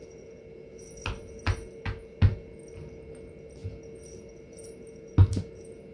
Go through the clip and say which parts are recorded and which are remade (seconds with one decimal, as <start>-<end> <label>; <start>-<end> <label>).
0.0-5.9 recorded